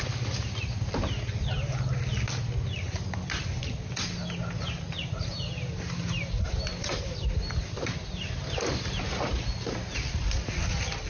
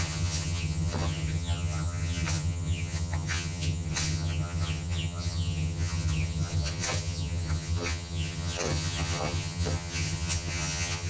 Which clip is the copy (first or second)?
second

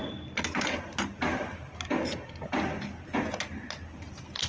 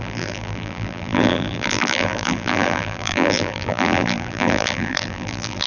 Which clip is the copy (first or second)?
second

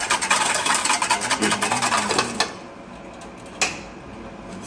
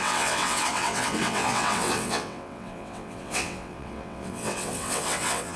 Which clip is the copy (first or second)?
second